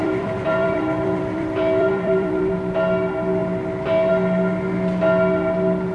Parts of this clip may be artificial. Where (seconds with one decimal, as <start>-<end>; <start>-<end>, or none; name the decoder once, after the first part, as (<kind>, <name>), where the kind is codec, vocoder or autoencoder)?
0.0-2.5 (vocoder, BigVGAN v2)